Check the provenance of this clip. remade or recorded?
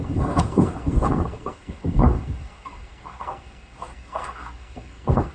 remade